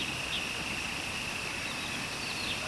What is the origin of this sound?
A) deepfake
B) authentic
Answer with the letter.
B